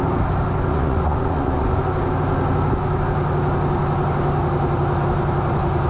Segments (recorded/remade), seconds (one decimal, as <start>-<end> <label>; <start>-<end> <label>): 0.0-0.7 recorded; 0.7-1.8 remade; 1.8-5.9 recorded